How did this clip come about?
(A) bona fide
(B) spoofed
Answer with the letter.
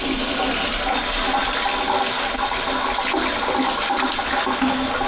A